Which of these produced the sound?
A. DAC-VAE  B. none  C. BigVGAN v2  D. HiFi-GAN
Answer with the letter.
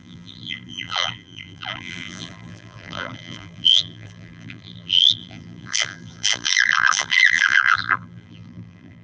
C